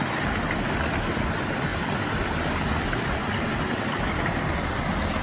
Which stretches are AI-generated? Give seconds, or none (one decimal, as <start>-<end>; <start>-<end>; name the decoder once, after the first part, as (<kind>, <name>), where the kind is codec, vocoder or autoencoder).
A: none